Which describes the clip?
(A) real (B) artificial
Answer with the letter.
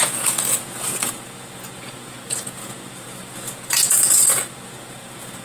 B